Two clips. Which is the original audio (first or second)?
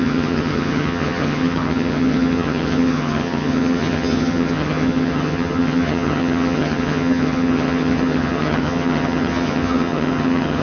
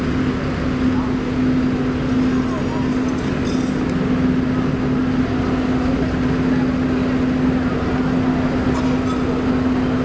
second